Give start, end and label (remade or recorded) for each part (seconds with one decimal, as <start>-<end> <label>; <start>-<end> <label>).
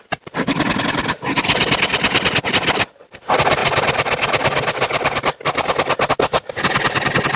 0.0-7.4 recorded